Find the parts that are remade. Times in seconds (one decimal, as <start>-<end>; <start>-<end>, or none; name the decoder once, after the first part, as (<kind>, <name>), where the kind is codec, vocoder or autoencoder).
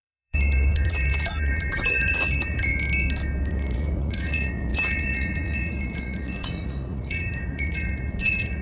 0.0-2.7 (vocoder, Vocos); 3.5-8.6